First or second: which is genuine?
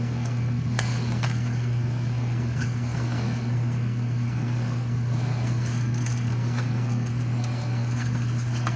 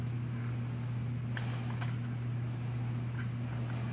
second